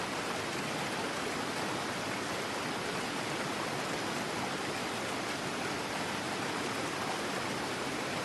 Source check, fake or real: real